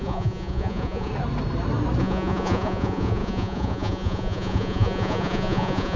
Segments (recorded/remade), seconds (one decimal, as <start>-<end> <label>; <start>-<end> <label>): 0.0-1.1 remade; 1.1-2.0 recorded; 2.0-6.0 remade